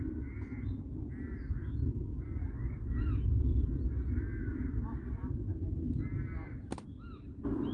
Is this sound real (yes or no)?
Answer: yes